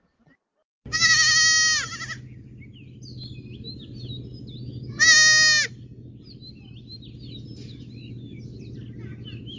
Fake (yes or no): no